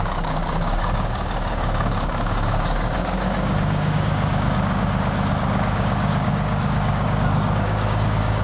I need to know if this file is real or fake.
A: fake